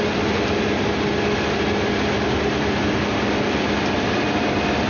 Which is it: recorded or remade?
recorded